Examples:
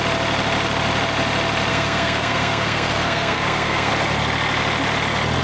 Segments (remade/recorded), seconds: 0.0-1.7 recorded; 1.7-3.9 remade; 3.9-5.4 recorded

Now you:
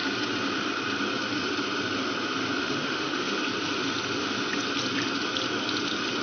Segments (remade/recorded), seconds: 0.0-2.6 recorded; 2.6-3.3 remade; 3.3-6.2 recorded

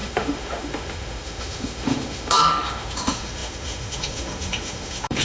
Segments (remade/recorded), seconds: 0.0-5.2 remade